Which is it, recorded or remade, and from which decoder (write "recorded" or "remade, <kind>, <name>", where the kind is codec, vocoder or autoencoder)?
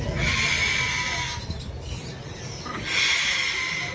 recorded